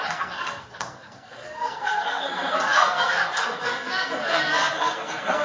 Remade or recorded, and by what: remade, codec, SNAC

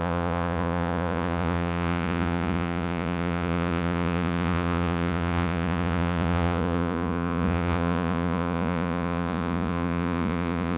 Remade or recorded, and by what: remade, vocoder, Vocos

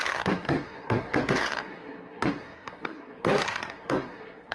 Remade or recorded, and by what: remade, codec, SNAC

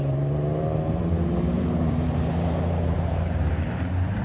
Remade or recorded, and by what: remade, vocoder, BigVGAN v2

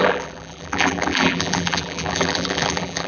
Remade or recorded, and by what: remade, vocoder, BigVGAN v2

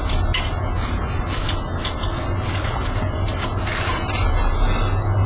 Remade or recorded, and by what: recorded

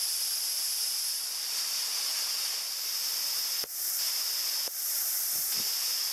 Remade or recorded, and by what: recorded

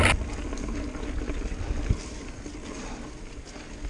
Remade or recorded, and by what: recorded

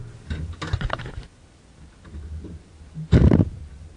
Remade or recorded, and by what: recorded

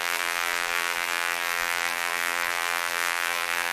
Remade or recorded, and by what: remade, vocoder, BigVGAN v2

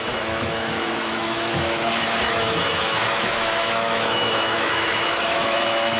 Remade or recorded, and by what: remade, autoencoder, DAC-VAE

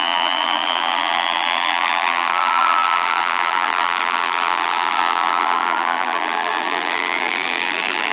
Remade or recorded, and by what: remade, vocoder, BigVGAN v2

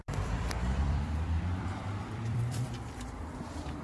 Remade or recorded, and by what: remade, vocoder, BigVGAN v2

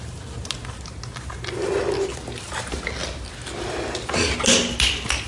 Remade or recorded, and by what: recorded